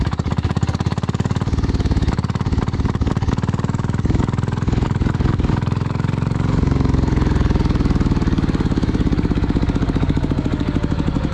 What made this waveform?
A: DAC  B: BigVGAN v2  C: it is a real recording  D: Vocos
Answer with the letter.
A